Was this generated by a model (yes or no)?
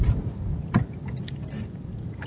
no